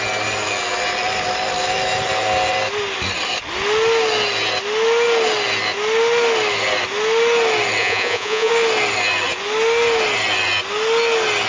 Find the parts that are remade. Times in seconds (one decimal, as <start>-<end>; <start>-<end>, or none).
7.8-8.5